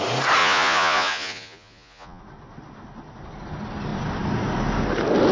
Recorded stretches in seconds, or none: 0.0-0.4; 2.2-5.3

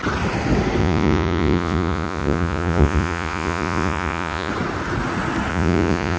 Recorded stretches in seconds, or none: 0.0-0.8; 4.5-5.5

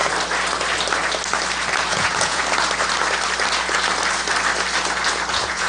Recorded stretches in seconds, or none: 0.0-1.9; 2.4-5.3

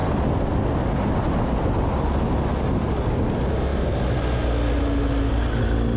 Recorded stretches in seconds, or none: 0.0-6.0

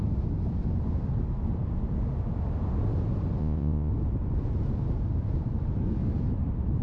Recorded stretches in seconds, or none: 0.0-3.4; 3.9-6.8